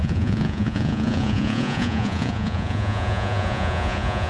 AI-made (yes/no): yes